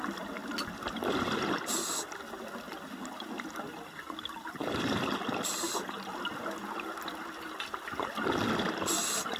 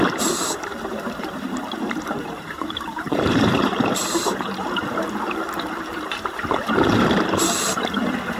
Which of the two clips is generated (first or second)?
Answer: second